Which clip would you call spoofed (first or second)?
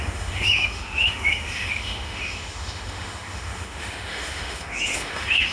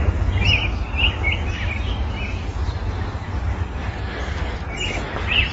first